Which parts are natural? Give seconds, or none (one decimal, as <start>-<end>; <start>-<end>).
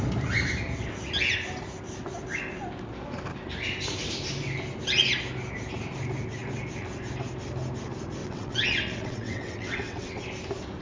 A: 0.0-8.2; 10.2-10.8